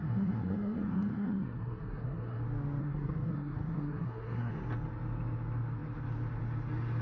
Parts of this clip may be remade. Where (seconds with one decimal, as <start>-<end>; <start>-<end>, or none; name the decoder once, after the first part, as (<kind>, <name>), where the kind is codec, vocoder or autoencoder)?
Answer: 0.0-2.4 (codec, SNAC); 2.8-4.5

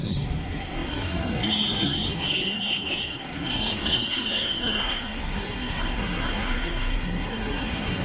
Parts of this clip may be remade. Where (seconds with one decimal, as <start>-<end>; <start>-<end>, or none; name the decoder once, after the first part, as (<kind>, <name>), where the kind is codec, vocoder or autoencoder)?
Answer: 0.0-8.0 (codec, SNAC)

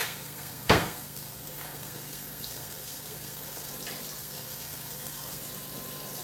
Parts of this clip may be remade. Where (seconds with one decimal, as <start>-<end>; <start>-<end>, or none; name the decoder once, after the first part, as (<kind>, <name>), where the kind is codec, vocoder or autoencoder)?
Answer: 0.0-3.7 (codec, SNAC); 4.2-5.4

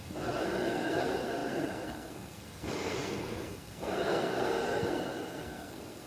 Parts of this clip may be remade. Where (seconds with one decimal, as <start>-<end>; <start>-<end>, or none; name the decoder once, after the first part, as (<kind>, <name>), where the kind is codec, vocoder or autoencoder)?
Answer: 0.0-6.1 (codec, SNAC)

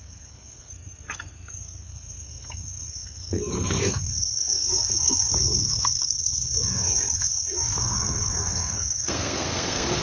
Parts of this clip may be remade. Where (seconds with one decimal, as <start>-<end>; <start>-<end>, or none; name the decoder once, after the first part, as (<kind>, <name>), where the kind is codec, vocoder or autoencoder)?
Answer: 0.0-10.0 (codec, SNAC)

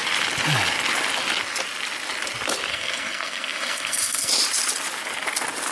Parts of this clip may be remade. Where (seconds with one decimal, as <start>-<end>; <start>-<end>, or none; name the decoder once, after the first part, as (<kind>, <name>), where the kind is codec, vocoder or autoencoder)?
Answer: 2.7-4.3 (codec, SNAC)